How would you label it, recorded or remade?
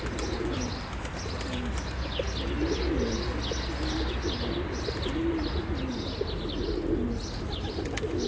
recorded